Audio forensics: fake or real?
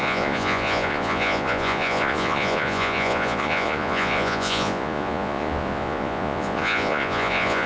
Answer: fake